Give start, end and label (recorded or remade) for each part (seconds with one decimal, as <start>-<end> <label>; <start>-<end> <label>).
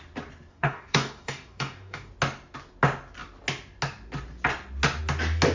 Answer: 0.0-0.5 recorded; 0.5-2.1 remade; 2.1-5.5 recorded